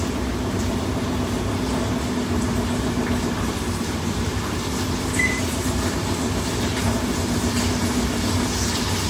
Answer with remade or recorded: remade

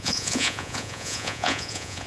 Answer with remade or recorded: remade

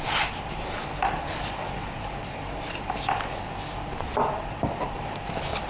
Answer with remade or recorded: recorded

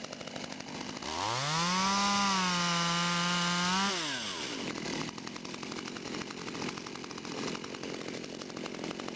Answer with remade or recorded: recorded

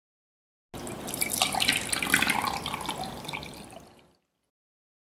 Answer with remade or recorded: recorded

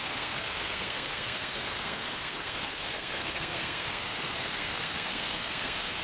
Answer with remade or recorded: remade